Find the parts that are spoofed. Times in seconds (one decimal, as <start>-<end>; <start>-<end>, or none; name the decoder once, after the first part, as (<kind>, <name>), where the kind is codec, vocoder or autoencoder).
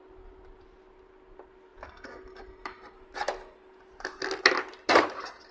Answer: none